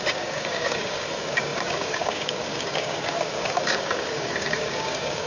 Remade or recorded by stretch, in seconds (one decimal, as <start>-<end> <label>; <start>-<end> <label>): 0.0-5.3 remade